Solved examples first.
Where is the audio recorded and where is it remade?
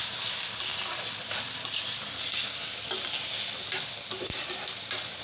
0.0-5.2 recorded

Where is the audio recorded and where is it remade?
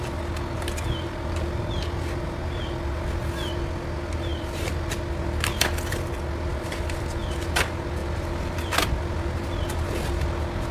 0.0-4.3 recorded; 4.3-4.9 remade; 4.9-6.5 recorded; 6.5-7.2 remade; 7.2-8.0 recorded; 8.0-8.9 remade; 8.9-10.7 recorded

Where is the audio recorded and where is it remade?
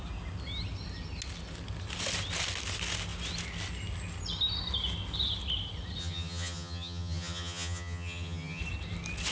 0.0-6.0 recorded; 6.0-8.6 remade; 8.6-9.3 recorded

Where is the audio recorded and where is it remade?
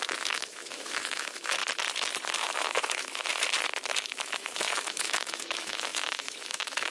0.0-1.6 remade; 1.6-2.4 recorded; 2.4-3.3 remade; 3.3-3.9 recorded; 3.9-6.9 remade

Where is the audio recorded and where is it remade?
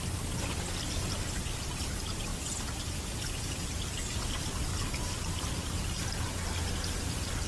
0.0-7.5 recorded